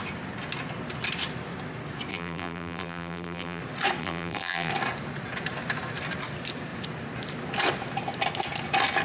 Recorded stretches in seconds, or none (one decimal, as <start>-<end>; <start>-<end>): 0.0-2.1; 3.6-4.0; 4.7-9.0